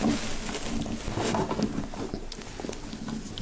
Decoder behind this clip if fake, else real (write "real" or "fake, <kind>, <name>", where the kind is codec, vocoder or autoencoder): real